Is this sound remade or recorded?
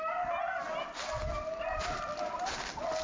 recorded